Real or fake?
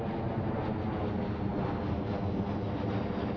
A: real